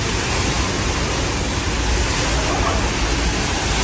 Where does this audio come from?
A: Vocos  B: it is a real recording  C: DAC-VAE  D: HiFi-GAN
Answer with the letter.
B